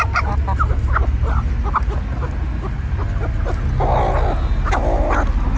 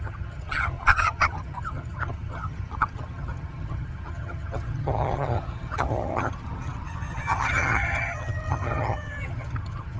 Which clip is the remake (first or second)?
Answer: second